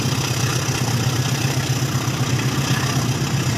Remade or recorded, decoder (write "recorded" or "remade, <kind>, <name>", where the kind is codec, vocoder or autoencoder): recorded